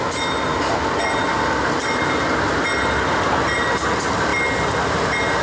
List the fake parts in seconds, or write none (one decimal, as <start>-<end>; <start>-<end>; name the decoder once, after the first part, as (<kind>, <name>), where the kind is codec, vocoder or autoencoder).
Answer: none